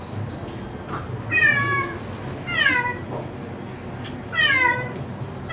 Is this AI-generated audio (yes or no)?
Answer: no